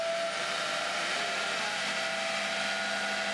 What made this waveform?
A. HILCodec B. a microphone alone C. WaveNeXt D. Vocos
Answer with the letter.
B